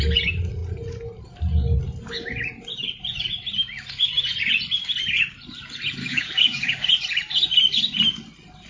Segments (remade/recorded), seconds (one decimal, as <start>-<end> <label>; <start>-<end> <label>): 0.0-6.0 recorded; 6.0-6.9 remade; 6.9-8.7 recorded